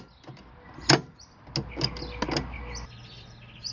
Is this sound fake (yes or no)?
no